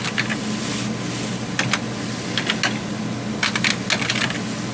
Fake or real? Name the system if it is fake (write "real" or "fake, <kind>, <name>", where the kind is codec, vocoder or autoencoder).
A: real